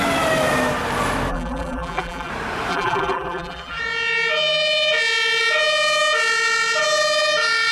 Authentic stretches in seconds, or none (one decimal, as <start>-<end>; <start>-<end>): 0.0-1.3; 2.3-2.7; 3.8-7.7

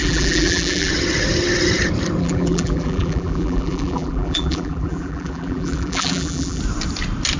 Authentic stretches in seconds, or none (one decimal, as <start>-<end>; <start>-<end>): 0.9-2.2; 6.6-7.4